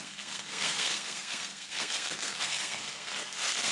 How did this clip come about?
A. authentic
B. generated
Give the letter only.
B